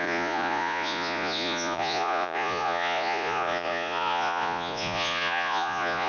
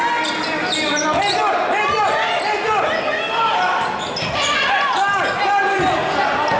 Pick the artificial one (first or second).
first